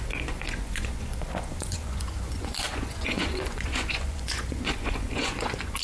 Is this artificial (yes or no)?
yes